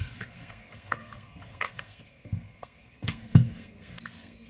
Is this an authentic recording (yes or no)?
no